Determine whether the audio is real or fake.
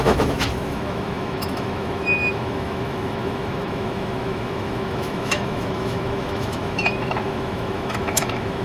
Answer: fake